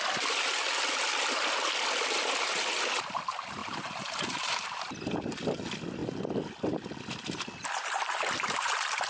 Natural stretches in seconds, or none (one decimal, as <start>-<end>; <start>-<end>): 0.0-3.6; 5.2-8.0; 8.7-9.1